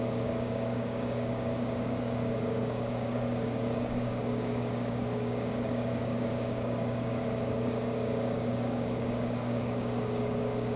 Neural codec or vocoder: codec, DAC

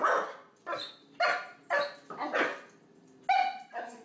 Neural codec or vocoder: none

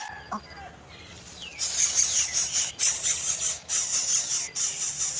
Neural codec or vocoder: none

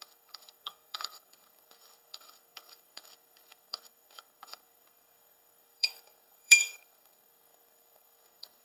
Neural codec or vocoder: codec, SNAC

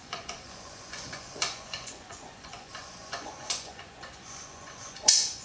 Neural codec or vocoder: vocoder, Vocos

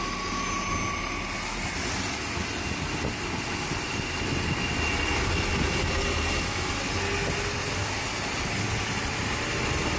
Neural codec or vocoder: none